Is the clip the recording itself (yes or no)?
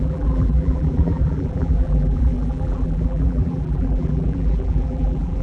no